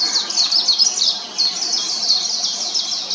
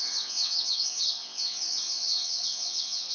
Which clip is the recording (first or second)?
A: first